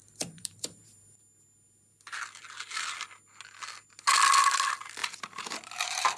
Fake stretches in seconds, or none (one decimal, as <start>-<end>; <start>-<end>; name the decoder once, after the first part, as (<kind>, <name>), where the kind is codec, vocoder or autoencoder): 0.0-1.2 (vocoder, BigVGAN v2); 5.0-6.2